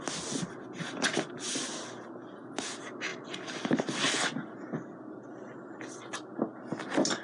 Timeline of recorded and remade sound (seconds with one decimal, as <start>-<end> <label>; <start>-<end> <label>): 0.0-7.2 recorded

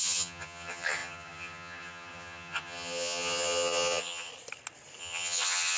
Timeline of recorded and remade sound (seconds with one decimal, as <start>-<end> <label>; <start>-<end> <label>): 0.0-4.3 remade; 4.3-5.0 recorded; 5.0-5.8 remade

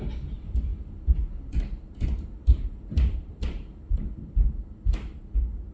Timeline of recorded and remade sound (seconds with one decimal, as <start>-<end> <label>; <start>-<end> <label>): 0.0-5.7 recorded

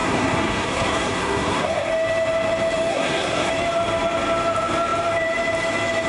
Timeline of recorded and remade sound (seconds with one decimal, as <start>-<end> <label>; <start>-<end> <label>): 0.0-1.9 remade; 1.9-2.9 recorded; 2.9-3.5 remade; 3.5-6.1 recorded

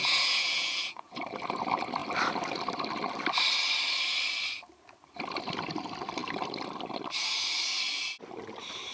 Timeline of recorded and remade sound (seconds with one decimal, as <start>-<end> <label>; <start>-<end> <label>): 0.0-1.2 remade; 1.2-8.9 recorded